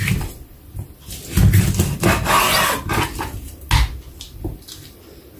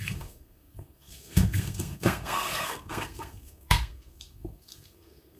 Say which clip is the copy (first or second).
second